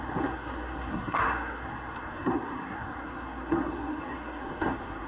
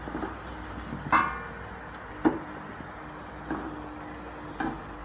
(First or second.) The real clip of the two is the second